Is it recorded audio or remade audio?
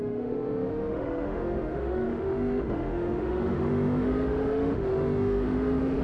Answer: remade